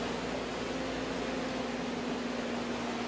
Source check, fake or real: real